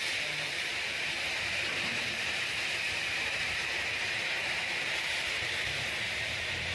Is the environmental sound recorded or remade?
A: remade